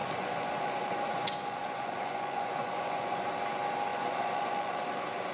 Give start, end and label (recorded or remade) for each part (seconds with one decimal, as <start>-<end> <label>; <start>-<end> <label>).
0.0-3.2 remade; 3.2-3.9 recorded; 3.9-4.8 remade; 4.8-5.3 recorded